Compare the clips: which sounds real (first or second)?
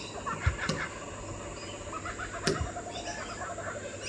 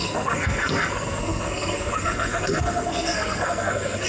first